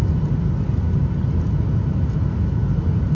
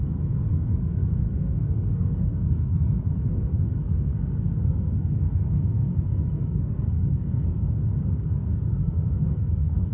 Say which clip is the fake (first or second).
second